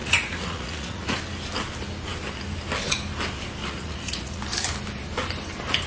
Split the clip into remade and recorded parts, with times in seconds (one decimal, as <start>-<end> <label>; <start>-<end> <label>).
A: 0.0-1.2 remade; 1.2-3.6 recorded; 3.6-4.4 remade; 4.4-5.9 recorded